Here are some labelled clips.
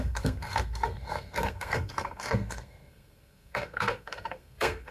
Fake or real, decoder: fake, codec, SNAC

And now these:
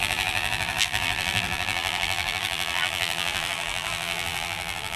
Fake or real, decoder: fake, vocoder, BigVGAN v2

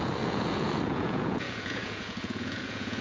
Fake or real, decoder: fake, vocoder, Vocos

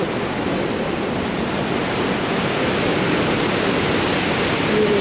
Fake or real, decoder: real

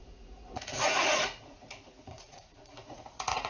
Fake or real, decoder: fake, vocoder, Vocos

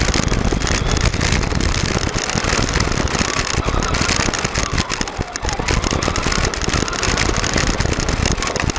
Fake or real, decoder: real